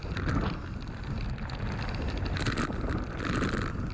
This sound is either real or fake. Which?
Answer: real